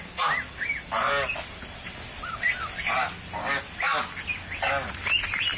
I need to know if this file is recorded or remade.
recorded